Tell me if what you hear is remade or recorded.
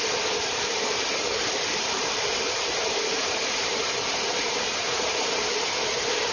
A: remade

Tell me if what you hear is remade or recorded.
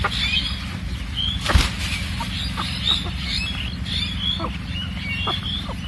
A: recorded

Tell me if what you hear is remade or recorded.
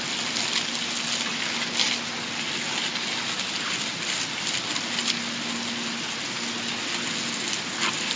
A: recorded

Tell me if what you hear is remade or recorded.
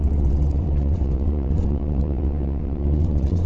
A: remade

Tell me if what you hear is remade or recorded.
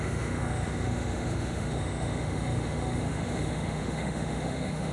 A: remade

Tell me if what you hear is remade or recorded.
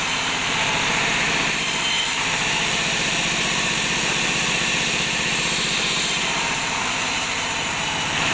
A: remade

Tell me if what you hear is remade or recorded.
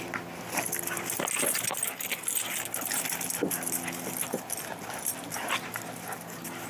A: recorded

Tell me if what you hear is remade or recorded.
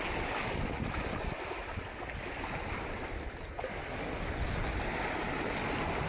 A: recorded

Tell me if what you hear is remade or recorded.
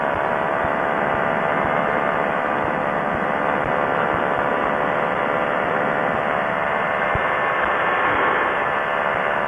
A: recorded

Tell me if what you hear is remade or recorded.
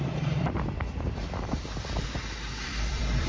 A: remade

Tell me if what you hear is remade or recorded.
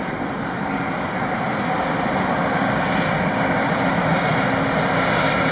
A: recorded